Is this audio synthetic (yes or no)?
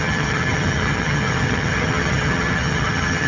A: yes